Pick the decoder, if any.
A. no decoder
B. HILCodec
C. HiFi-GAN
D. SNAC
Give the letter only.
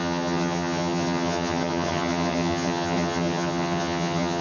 C